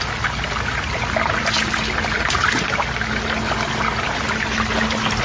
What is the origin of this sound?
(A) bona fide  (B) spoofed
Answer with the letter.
A